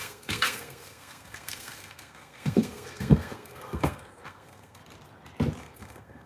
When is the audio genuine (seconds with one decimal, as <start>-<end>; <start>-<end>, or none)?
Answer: 4.8-5.6